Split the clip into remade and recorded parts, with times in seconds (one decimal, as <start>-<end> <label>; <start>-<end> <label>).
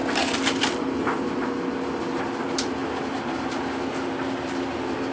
0.0-5.1 recorded